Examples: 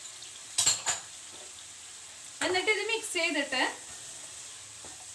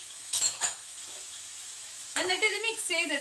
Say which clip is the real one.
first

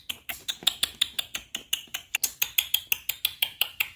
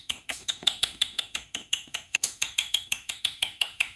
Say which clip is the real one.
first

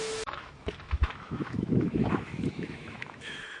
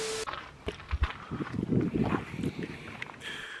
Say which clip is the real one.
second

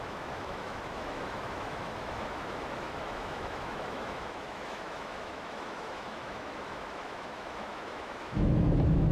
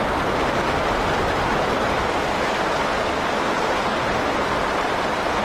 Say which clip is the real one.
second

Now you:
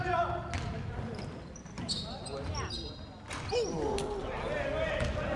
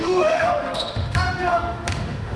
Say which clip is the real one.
first